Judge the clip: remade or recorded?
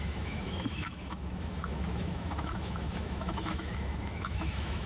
remade